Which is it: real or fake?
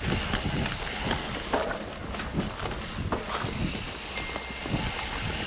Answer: real